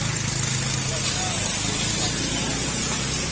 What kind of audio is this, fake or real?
real